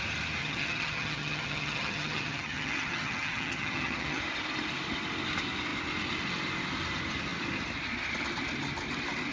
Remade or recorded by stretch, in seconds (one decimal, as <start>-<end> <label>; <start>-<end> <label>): 0.0-0.4 recorded; 0.4-4.2 remade; 4.2-9.3 recorded